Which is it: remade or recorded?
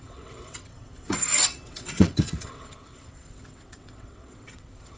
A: remade